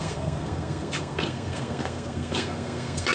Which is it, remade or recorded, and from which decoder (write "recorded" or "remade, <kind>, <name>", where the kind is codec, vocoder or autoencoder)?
remade, codec, SNAC